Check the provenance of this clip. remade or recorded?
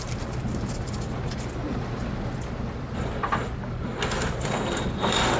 recorded